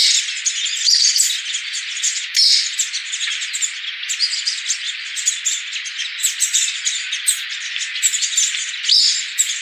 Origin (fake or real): real